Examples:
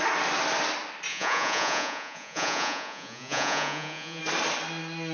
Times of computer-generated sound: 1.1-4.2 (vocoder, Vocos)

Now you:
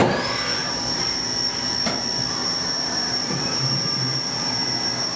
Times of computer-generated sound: 0.6-1.3 (vocoder, BigVGAN v2); 2.4-5.2

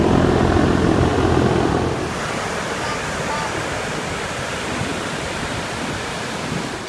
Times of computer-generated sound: 4.9-5.5 (vocoder, BigVGAN v2)

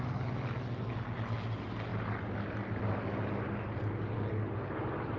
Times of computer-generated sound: none

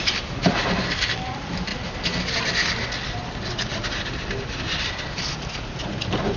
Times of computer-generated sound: 0.0-1.7 (vocoder, BigVGAN v2); 4.6-6.4

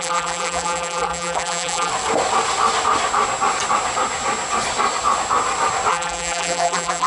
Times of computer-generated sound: 0.0-1.9 (vocoder, BigVGAN v2); 5.9-7.1